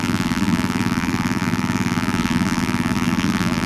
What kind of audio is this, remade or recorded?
remade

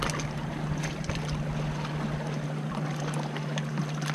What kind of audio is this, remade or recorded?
recorded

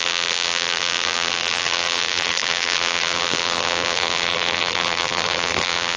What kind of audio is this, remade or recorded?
remade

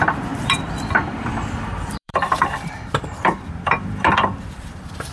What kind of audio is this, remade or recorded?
remade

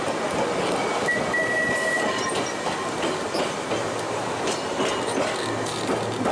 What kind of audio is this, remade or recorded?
recorded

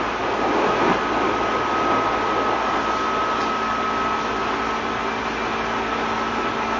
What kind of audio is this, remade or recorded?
recorded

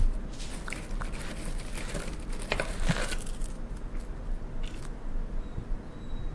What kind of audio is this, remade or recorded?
recorded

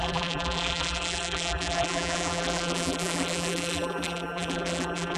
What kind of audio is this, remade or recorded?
remade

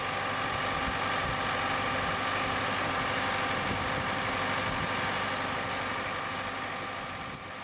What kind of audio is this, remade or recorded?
recorded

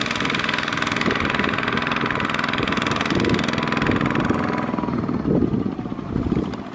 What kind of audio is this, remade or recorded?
recorded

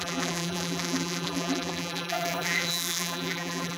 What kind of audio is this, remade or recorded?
remade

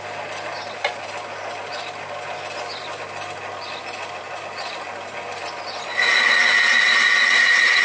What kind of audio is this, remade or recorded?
recorded